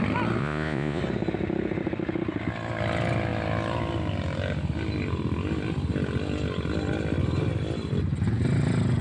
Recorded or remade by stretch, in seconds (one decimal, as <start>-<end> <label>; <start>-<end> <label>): 0.0-0.4 recorded; 0.4-1.0 remade; 1.0-9.0 recorded